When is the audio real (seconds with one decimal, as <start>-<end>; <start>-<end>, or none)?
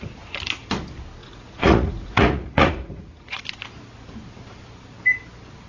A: 0.0-1.2; 3.4-5.7